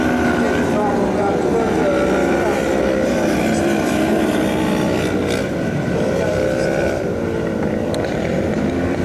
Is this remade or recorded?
recorded